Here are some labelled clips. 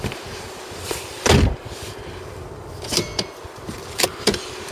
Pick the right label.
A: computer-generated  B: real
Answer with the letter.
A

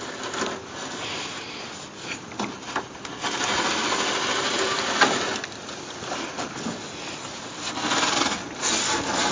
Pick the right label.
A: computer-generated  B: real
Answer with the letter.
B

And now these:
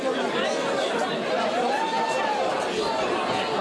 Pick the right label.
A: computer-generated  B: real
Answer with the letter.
B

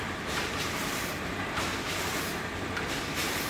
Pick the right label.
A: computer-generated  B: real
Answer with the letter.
A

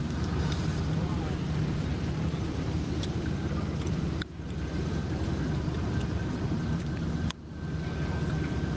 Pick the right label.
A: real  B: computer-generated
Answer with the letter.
B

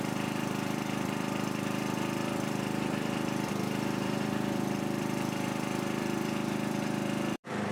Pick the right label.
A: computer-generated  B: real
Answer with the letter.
A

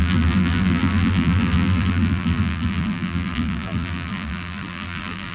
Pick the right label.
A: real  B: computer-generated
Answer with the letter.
B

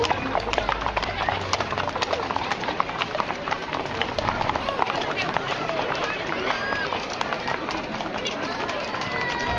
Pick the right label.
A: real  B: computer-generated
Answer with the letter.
B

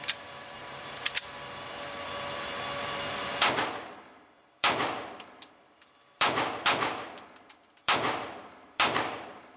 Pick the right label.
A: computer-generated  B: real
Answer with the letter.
A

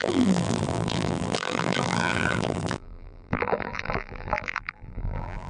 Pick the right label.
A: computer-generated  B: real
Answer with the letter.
A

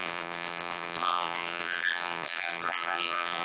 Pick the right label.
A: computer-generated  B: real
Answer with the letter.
A